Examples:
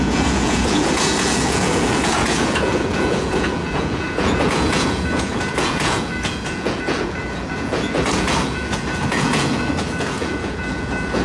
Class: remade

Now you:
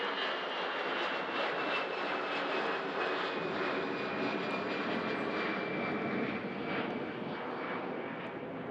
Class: recorded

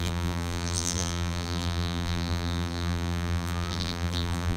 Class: remade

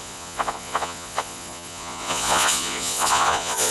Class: remade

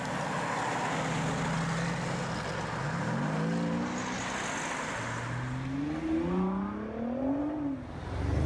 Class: recorded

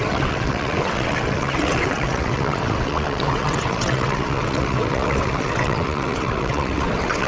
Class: remade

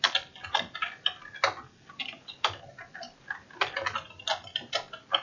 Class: recorded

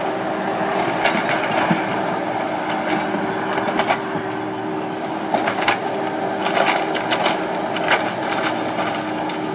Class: recorded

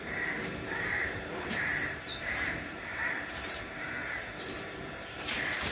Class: remade